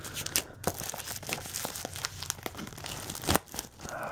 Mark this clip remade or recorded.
recorded